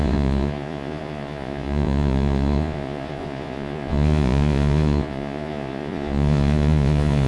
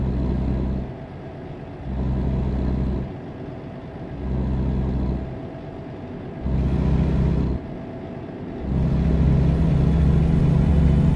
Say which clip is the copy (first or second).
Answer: first